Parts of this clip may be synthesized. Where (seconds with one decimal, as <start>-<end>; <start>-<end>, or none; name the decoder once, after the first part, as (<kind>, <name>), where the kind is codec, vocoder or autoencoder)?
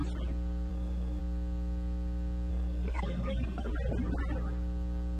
0.7-1.2 (codec, SNAC); 2.5-3.7